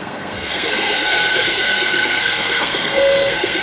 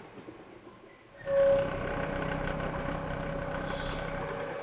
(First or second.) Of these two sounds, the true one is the second